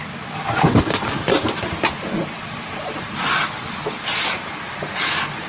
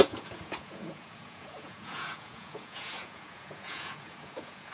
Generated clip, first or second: second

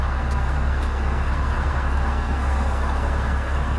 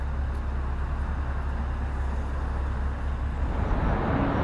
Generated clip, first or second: first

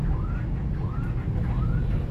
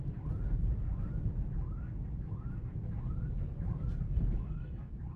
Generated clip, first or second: second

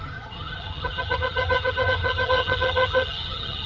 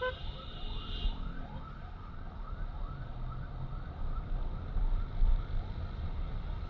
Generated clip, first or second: first